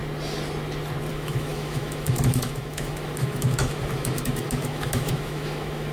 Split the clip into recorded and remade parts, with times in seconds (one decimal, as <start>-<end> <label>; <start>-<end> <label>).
0.0-1.1 recorded; 1.1-5.9 remade